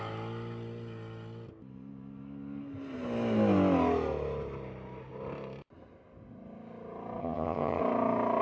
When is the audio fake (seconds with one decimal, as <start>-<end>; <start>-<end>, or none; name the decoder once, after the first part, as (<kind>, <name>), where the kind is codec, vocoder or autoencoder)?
7.2-7.8 (vocoder, HiFi-GAN)